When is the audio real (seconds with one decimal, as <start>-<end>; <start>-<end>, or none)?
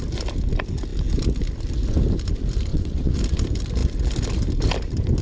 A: 0.0-2.7; 3.2-5.2